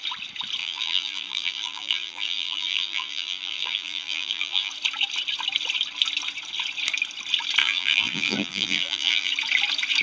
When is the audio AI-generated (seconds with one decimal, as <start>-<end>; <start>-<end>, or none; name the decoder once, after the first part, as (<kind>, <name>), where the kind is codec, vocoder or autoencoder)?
0.6-4.7 (vocoder, BigVGAN v2); 7.6-9.3